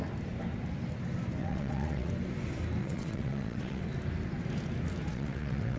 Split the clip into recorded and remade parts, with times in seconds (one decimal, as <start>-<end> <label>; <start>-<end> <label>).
0.0-1.4 recorded; 1.4-2.1 remade; 2.1-2.8 recorded; 2.8-3.8 remade; 3.8-5.1 recorded; 5.1-5.8 remade